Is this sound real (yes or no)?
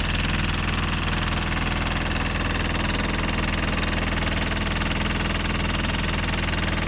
yes